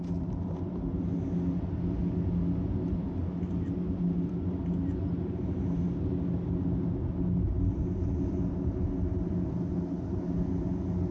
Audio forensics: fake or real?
real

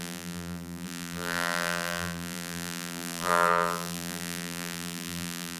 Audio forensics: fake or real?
fake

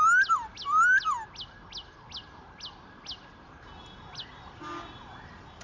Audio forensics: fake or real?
real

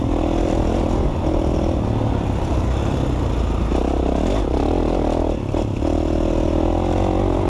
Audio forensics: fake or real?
real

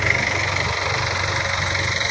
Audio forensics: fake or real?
real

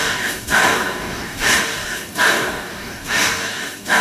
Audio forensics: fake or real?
fake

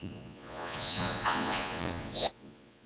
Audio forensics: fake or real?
fake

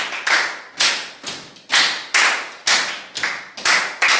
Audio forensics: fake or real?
real